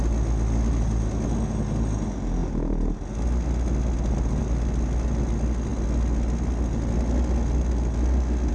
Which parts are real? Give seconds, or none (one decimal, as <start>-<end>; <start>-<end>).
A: 0.0-8.5